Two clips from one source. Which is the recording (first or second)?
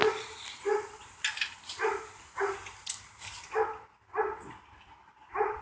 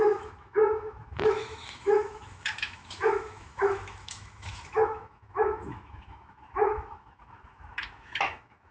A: first